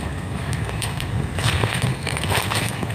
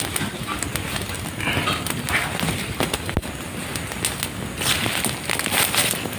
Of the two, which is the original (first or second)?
second